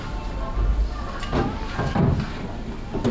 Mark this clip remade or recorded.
recorded